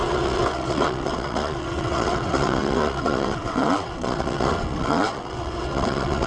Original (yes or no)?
no